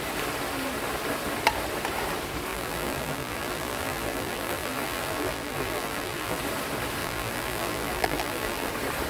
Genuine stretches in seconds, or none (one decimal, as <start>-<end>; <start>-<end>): 0.0-2.5; 6.4-7.0; 8.7-9.1